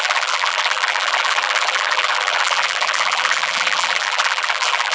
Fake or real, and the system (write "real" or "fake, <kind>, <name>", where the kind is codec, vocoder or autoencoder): fake, vocoder, BigVGAN v2